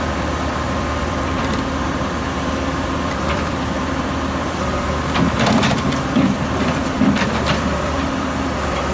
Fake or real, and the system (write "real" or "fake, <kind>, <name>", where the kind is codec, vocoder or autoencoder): fake, vocoder, BigVGAN v2